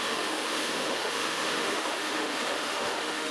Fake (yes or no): yes